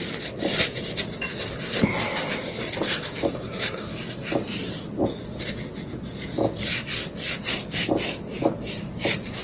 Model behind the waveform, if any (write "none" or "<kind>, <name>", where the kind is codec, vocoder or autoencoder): none